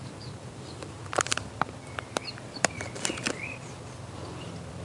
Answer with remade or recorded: remade